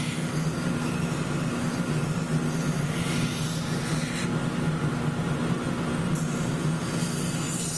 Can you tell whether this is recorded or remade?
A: recorded